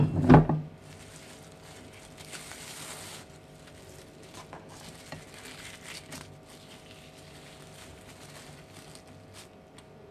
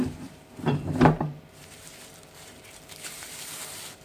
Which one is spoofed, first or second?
second